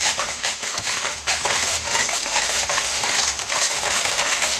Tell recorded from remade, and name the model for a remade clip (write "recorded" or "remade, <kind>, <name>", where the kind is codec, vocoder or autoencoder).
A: remade, autoencoder, DAC-VAE